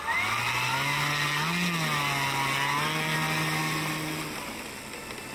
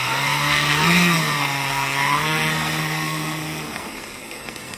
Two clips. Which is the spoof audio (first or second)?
second